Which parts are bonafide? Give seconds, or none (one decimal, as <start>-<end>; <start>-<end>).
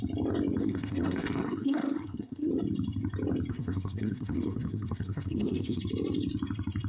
0.0-0.6; 2.5-3.5; 5.8-6.9